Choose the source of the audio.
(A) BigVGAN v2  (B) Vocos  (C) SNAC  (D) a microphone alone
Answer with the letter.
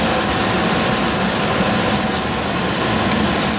D